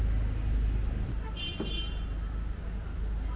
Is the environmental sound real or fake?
real